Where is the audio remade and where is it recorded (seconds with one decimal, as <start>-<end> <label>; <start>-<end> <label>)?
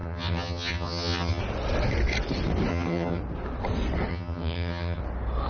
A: 0.0-1.4 remade; 1.4-2.7 recorded; 2.7-3.2 remade; 3.2-4.1 recorded; 4.1-5.0 remade; 5.0-5.5 recorded